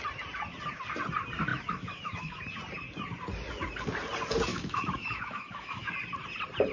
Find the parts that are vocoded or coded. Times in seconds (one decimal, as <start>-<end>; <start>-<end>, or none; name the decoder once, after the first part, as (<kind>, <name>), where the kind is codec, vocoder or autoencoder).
1.5-2.4 (autoencoder, DAC-VAE); 4.5-5.9